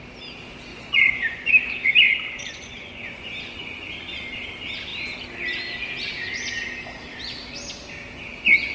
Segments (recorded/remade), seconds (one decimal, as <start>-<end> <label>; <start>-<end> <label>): 0.0-0.7 recorded; 0.7-1.5 remade; 1.5-2.1 recorded; 2.1-4.2 remade; 4.2-8.7 recorded